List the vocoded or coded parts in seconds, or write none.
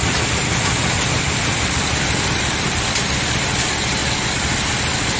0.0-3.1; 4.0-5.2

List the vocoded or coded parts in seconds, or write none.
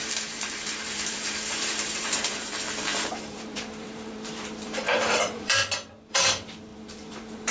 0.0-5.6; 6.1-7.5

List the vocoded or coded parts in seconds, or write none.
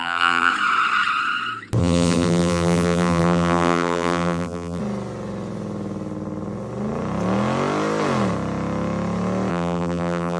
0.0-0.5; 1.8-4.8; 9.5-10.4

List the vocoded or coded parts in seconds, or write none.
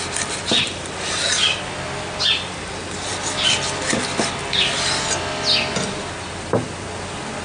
none